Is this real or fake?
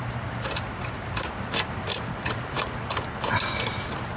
fake